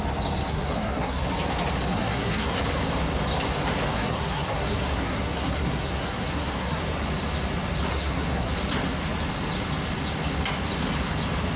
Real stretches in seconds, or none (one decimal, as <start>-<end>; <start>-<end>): 0.0-0.5; 1.3-1.9; 2.6-3.9; 6.8-7.9; 8.5-11.6